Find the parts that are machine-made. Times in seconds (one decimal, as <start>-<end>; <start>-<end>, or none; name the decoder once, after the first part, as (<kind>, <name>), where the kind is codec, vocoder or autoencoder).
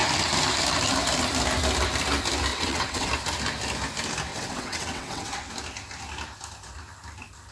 2.5-3.1 (vocoder, WaveNeXt); 4.3-5.5